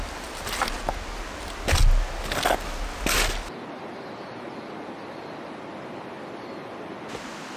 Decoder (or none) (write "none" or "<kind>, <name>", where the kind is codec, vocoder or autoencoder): none